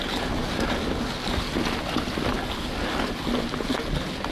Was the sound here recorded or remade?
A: recorded